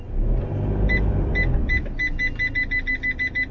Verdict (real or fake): real